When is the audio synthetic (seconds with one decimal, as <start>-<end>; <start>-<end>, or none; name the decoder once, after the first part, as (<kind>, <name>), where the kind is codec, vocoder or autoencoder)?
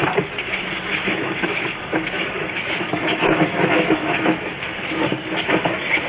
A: 0.9-4.5 (autoencoder, DAC-VAE)